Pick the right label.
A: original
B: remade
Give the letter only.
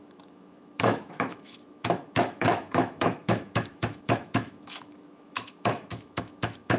B